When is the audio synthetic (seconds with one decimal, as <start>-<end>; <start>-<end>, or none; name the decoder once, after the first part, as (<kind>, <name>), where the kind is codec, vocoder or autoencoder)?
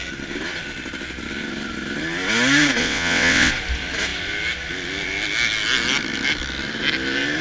2.8-3.5 (vocoder, WaveNeXt)